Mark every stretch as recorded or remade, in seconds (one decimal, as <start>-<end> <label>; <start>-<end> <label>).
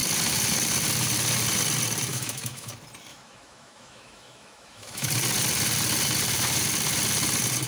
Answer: 0.0-2.1 recorded; 2.1-2.7 remade; 2.7-3.1 recorded; 3.1-5.1 remade; 5.1-7.7 recorded